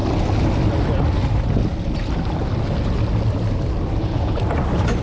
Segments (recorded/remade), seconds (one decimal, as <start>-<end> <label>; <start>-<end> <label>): 0.0-5.0 recorded